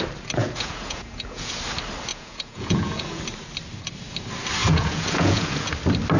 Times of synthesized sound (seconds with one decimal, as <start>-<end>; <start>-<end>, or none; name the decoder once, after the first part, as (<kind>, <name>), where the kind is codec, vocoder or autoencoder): 0.4-1.5 (vocoder, Vocos); 2.1-3.2; 4.6-5.7